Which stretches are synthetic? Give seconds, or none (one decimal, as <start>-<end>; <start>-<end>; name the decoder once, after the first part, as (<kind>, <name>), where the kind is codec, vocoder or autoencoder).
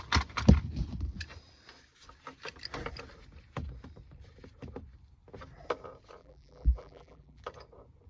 6.2-7.4 (vocoder, BigVGAN v2)